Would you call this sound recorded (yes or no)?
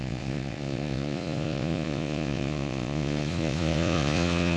no